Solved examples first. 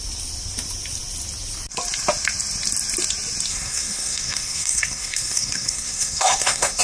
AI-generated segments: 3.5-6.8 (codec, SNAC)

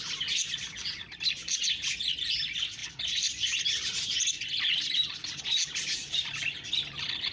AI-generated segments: none

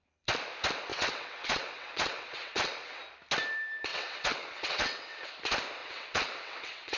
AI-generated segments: 0.9-3.0 (vocoder, WaveNeXt); 3.9-5.3; 5.8-7.0